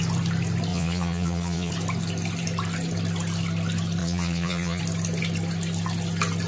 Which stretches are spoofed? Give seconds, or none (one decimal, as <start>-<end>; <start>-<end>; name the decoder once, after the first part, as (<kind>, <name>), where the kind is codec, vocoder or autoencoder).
0.7-1.7 (vocoder, Vocos); 4.0-4.8